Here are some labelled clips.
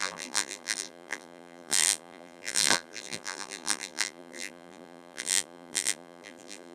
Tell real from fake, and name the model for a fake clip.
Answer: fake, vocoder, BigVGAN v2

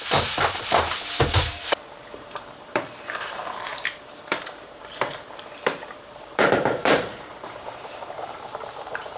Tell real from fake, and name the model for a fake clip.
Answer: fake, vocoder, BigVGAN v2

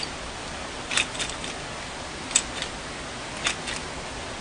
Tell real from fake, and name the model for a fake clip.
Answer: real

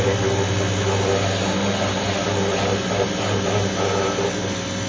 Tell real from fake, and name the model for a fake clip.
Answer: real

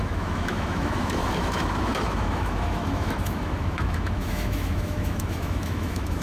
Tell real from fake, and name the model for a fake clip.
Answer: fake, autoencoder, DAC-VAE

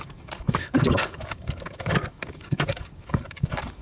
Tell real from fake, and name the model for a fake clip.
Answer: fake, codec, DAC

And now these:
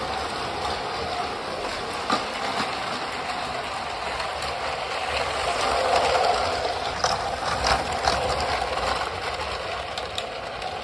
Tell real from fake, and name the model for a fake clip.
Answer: real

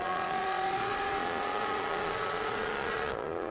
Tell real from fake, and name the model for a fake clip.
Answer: fake, vocoder, Vocos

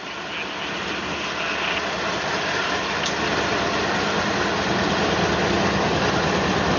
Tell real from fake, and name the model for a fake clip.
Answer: real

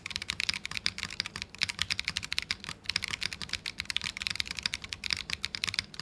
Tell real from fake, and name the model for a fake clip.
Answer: real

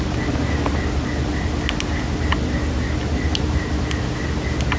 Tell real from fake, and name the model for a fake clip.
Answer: real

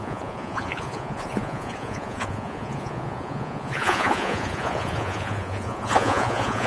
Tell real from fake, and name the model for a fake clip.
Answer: fake, vocoder, Vocos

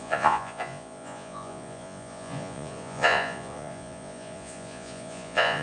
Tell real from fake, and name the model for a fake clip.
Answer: fake, vocoder, Vocos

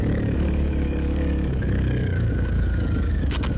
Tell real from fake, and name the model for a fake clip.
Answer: fake, codec, DAC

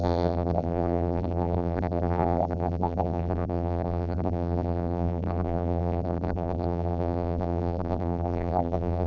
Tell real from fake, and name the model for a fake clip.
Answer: fake, vocoder, BigVGAN v2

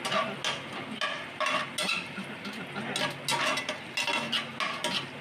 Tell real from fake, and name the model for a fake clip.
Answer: real